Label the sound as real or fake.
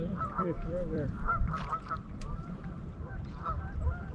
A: fake